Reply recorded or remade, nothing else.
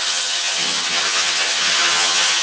remade